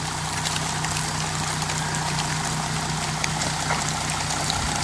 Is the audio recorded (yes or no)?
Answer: yes